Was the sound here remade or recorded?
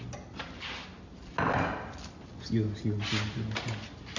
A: recorded